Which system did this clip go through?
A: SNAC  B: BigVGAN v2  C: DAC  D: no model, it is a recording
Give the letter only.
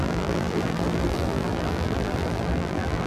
B